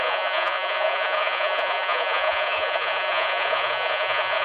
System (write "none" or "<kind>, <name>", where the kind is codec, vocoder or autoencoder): vocoder, Vocos